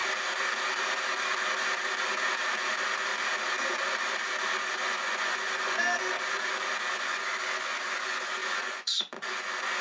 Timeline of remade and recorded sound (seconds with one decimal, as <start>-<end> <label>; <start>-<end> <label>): 0.0-4.6 recorded; 4.6-5.8 remade; 5.8-6.9 recorded; 6.9-9.8 remade